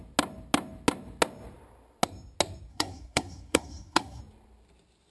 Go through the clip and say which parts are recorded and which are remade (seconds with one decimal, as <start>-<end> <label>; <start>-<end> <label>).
0.0-2.7 recorded; 2.7-4.2 remade; 4.2-5.1 recorded